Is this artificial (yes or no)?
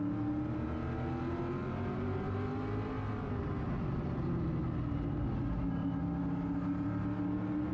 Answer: no